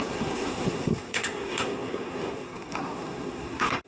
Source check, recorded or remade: remade